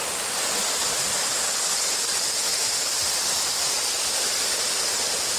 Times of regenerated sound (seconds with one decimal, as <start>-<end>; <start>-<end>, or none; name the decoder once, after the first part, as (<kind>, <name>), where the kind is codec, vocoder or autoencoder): 0.7-2.5 (vocoder, BigVGAN v2); 3.1-5.4